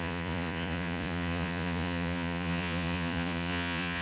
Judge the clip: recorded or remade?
remade